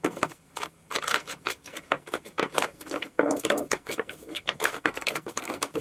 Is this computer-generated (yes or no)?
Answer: yes